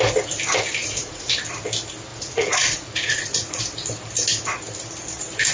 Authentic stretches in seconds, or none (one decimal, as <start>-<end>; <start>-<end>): 0.0-0.8; 1.3-2.1; 3.6-5.5